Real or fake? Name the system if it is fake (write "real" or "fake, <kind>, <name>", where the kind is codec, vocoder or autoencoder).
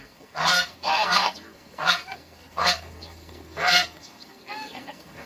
fake, codec, SNAC